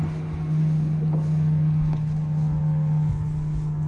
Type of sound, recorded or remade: recorded